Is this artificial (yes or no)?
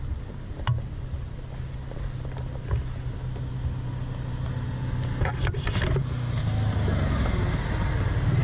no